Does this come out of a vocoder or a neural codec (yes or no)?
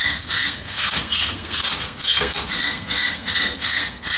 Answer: yes